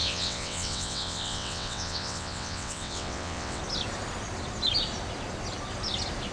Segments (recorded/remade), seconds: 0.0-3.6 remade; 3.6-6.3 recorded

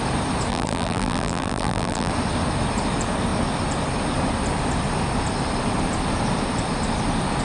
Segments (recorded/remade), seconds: 0.0-0.5 recorded; 0.5-2.1 remade; 2.1-7.4 recorded

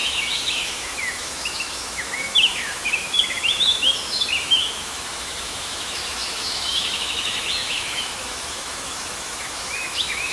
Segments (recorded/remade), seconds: 0.0-10.3 remade